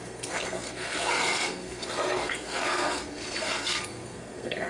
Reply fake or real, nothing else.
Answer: fake